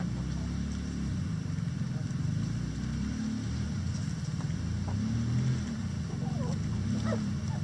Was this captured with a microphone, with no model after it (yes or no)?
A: yes